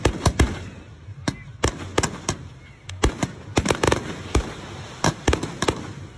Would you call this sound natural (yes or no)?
yes